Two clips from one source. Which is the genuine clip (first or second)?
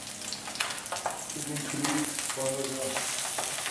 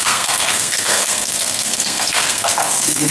first